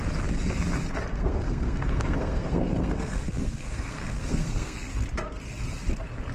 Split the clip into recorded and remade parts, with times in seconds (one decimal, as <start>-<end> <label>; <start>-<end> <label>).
0.0-1.1 recorded; 1.1-4.9 remade; 4.9-6.3 recorded